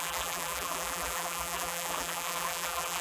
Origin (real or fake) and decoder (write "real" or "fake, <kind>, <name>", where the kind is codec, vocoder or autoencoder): fake, vocoder, BigVGAN v2